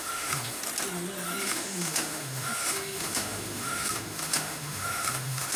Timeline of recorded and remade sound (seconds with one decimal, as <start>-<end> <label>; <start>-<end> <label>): 0.0-0.6 remade; 0.6-1.4 recorded; 1.4-5.6 remade